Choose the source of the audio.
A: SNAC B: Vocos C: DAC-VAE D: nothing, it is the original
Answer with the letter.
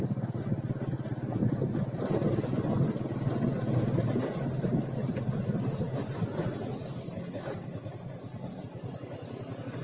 D